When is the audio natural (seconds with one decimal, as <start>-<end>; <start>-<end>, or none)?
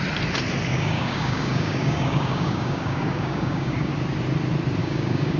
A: 0.0-0.7; 3.9-4.8